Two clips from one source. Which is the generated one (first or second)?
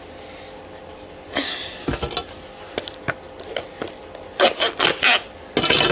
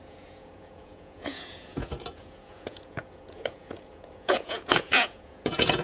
second